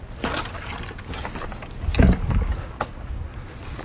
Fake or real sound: real